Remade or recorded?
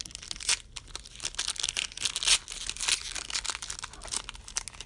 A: recorded